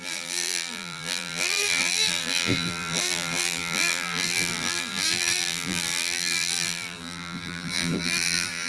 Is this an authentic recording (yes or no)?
no